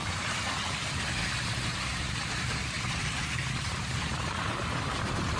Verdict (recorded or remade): remade